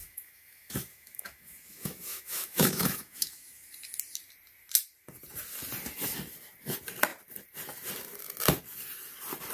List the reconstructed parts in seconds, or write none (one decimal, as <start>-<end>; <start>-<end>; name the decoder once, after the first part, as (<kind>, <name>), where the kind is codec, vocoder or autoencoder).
0.0-3.7 (autoencoder, DAC-VAE)